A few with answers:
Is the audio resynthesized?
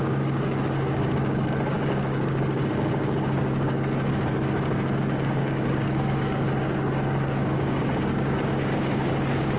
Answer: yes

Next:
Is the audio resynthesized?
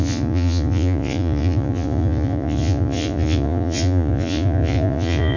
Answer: yes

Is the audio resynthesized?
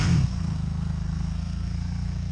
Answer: yes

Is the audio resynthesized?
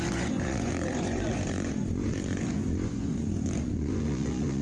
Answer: yes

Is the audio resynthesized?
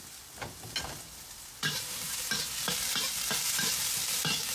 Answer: no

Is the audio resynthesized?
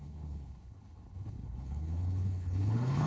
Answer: yes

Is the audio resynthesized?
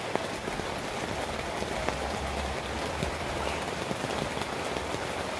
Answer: no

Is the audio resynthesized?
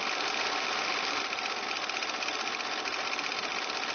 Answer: no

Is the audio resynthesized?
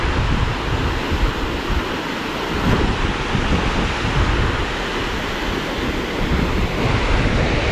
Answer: no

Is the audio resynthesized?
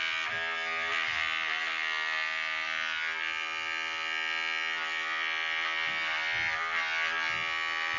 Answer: no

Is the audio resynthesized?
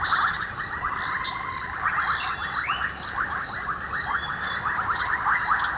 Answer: no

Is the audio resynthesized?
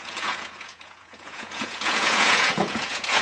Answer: yes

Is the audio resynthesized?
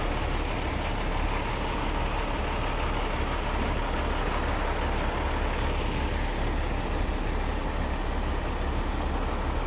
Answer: no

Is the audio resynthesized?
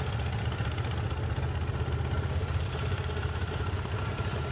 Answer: no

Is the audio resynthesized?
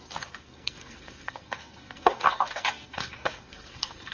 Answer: yes